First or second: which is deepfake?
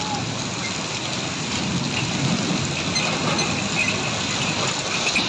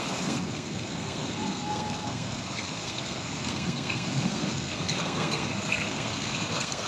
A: second